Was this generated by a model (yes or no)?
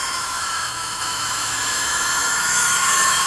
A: yes